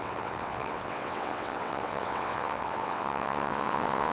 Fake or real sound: fake